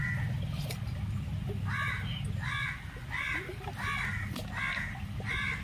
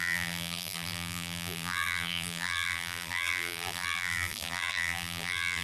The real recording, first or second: first